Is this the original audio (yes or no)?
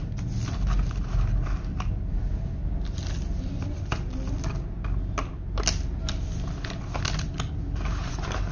yes